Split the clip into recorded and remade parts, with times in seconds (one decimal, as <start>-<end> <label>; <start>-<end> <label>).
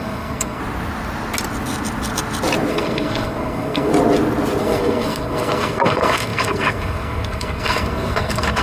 0.0-0.6 remade; 0.6-2.7 recorded; 2.7-3.9 remade; 3.9-4.6 recorded; 4.6-8.6 remade